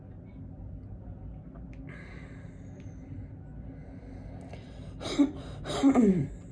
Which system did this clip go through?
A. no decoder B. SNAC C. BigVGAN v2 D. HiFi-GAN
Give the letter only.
A